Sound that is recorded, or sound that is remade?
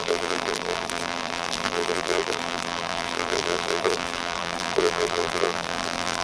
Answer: remade